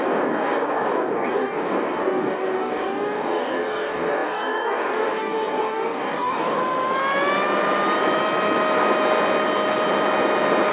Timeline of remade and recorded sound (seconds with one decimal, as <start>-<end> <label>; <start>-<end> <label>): 0.0-6.6 remade; 6.6-10.7 recorded